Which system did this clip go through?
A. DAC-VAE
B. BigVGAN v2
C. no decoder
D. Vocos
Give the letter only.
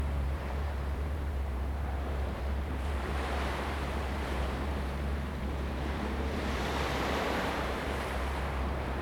B